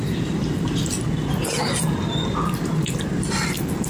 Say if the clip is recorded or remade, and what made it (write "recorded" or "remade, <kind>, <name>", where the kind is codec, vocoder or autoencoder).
recorded